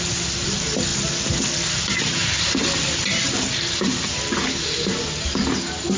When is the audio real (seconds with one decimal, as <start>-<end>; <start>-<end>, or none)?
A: 0.0-6.0